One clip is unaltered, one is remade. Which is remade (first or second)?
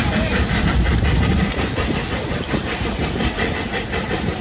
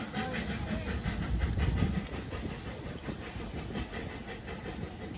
first